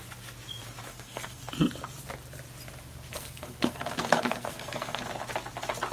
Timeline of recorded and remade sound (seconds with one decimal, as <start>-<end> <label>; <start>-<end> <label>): 0.0-0.9 recorded; 0.9-1.5 remade; 1.5-3.1 recorded; 3.1-5.0 remade; 5.0-5.9 recorded